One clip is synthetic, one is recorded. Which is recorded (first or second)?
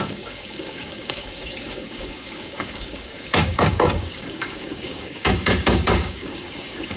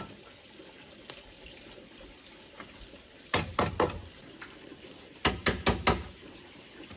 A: second